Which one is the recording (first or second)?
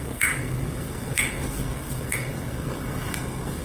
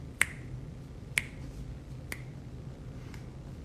second